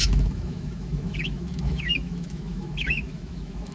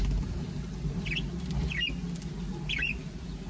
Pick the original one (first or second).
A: second